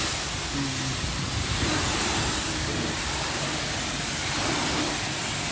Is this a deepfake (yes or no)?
no